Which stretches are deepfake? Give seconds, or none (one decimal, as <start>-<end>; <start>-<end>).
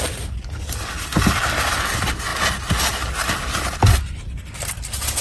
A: none